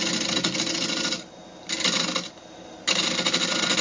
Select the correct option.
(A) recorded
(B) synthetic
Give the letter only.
A